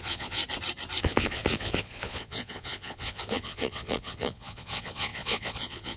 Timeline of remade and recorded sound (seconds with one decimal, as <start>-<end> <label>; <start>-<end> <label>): 0.0-0.4 remade; 0.4-1.0 recorded; 1.0-6.0 remade